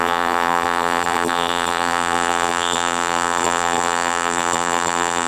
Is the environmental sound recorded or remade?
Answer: remade